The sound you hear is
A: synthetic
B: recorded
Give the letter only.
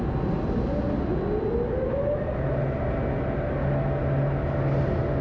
B